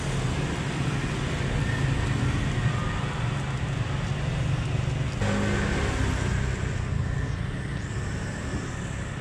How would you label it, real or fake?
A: real